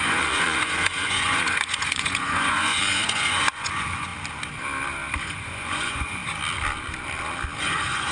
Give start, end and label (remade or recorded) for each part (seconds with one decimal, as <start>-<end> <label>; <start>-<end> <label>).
0.0-4.1 remade; 4.1-5.2 recorded; 5.2-6.2 remade; 6.2-7.6 recorded; 7.6-8.1 remade